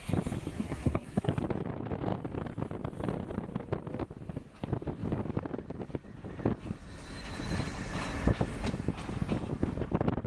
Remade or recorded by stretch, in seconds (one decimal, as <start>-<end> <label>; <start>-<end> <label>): 0.0-0.5 recorded; 0.5-1.3 remade; 1.3-10.3 recorded